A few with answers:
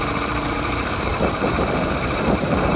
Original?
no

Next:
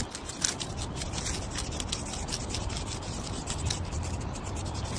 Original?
yes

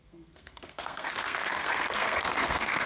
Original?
no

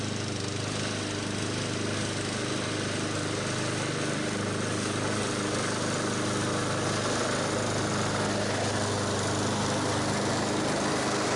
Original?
yes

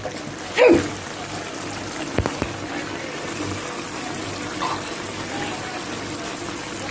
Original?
yes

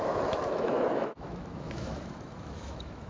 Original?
no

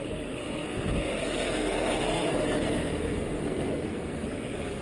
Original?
no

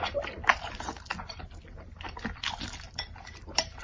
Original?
yes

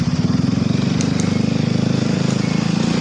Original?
yes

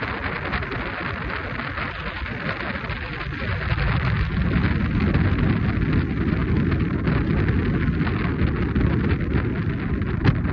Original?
yes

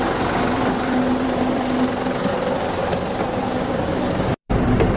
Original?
no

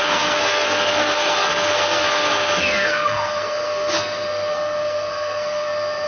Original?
no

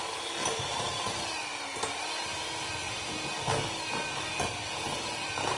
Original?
yes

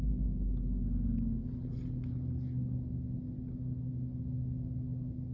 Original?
yes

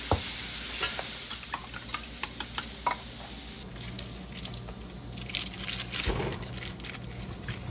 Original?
yes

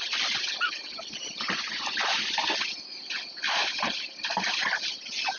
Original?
yes